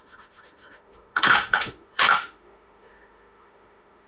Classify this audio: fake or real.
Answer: fake